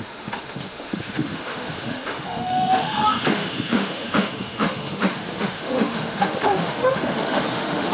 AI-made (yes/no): yes